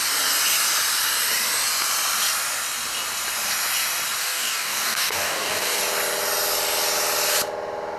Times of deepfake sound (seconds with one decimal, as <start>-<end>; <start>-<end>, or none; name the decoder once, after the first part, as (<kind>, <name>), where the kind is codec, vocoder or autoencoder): 4.2-5.8 (codec, DAC)